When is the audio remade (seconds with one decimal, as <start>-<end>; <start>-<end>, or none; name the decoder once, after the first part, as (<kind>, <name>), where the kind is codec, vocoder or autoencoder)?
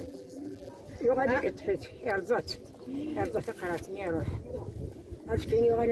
0.0-0.7 (vocoder, BigVGAN v2)